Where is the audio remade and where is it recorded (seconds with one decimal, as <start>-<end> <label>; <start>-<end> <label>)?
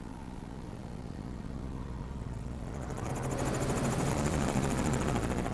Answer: 0.0-3.1 remade; 3.1-4.1 recorded; 4.1-5.5 remade